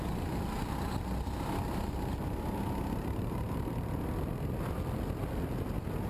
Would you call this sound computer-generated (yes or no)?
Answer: no